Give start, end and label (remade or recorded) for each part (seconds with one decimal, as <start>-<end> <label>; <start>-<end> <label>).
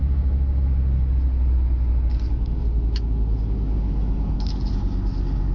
0.0-5.5 recorded